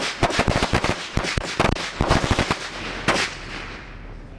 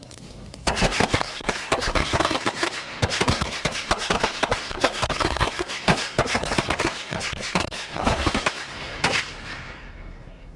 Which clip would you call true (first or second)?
first